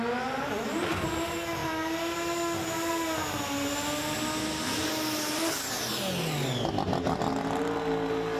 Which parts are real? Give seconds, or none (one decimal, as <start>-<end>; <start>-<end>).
0.0-8.4